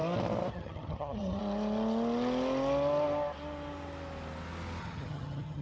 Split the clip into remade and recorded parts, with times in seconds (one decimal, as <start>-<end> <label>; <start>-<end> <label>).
0.0-0.5 recorded; 0.5-1.4 remade; 1.4-4.8 recorded; 4.8-5.6 remade